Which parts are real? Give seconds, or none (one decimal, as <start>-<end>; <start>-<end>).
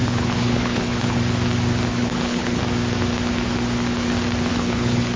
1.2-1.9; 2.6-4.5